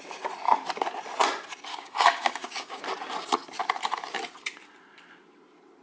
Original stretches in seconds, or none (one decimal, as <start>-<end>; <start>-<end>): 0.0-1.7; 2.8-5.8